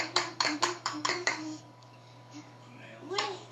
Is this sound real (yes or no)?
no